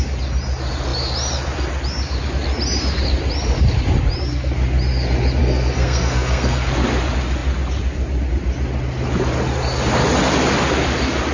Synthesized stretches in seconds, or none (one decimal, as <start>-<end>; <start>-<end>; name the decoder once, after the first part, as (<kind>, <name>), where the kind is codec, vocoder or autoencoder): 5.4-6.7 (codec, SNAC)